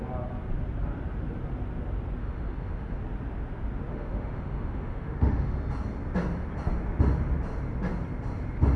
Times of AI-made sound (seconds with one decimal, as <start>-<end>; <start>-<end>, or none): 2.2-3.0; 3.9-5.6